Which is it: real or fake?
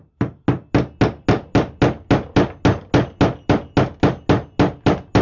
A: real